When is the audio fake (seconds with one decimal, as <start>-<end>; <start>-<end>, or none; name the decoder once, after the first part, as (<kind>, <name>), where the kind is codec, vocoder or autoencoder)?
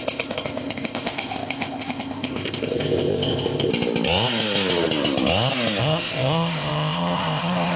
0.0-3.7 (codec, ZipCodec); 5.8-7.8